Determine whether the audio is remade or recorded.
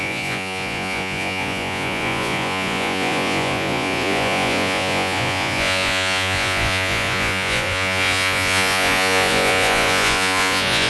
remade